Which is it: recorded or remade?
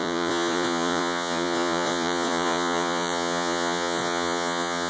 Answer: remade